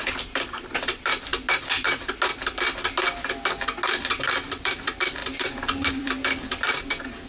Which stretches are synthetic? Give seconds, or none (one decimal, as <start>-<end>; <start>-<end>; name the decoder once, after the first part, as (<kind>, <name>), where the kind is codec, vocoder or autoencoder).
0.0-1.3 (vocoder, BigVGAN v2); 4.5-7.3